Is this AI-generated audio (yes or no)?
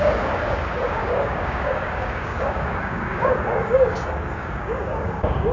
yes